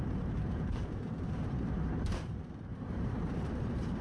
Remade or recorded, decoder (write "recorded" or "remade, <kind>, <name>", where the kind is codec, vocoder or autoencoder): remade, vocoder, BigVGAN v2